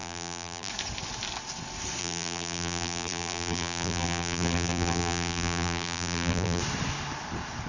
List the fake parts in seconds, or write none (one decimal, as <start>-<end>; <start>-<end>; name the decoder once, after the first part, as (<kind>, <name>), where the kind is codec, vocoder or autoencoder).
0.0-0.7 (vocoder, BigVGAN v2); 2.0-6.6